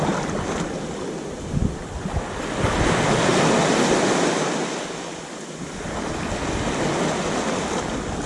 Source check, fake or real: real